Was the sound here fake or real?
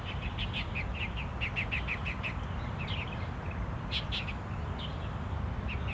real